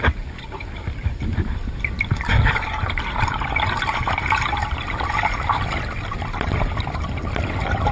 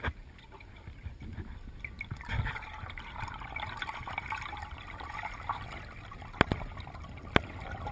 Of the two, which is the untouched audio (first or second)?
second